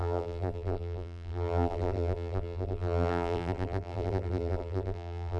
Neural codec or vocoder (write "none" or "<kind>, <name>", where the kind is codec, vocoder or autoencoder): vocoder, BigVGAN v2